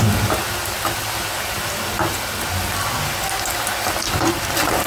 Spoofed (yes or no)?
no